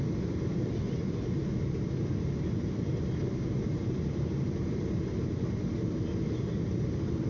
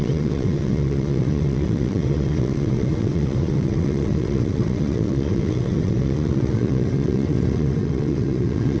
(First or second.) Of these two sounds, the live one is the first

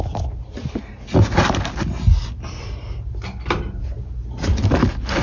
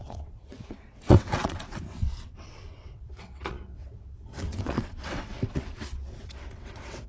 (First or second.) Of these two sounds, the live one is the first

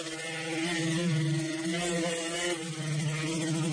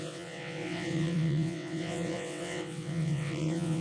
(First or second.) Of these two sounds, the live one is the first